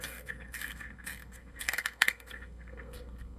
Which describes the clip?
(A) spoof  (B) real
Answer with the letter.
A